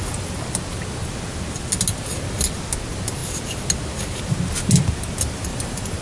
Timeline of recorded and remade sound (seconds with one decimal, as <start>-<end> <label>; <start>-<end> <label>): 0.0-5.5 recorded; 5.5-6.0 remade